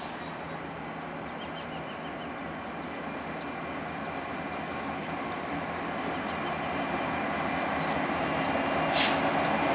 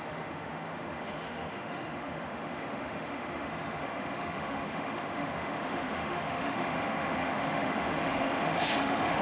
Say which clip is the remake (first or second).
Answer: second